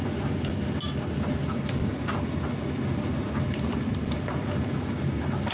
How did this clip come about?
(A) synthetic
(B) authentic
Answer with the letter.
B